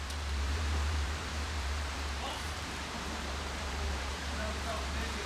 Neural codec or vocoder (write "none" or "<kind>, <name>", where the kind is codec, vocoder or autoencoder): vocoder, BigVGAN v2